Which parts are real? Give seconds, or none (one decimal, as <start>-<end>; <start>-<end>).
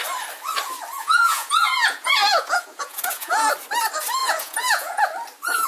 0.0-1.0; 3.5-4.2; 5.0-5.7